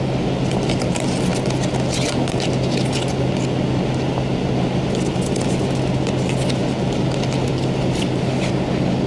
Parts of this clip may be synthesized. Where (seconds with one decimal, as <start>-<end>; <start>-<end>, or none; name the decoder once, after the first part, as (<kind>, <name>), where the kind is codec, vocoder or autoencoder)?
none